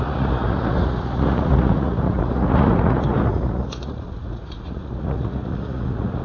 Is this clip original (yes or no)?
no